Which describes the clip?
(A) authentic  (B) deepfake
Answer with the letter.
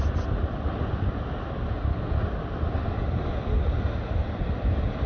A